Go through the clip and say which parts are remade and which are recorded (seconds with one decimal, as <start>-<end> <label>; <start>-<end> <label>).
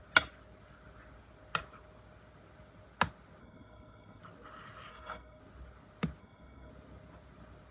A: 0.0-3.4 recorded; 3.4-4.2 remade; 4.2-4.9 recorded; 4.9-5.4 remade; 5.4-6.2 recorded; 6.2-6.7 remade; 6.7-7.7 recorded